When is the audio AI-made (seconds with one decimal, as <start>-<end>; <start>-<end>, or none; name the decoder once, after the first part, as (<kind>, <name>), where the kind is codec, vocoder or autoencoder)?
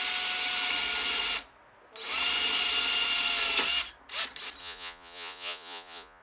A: 4.6-6.2 (vocoder, Vocos)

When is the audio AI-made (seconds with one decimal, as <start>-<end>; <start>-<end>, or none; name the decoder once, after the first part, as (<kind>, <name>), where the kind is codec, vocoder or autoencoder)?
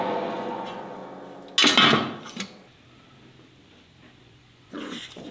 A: 0.0-1.0 (vocoder, Vocos); 4.2-5.3